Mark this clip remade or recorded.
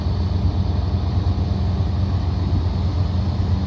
recorded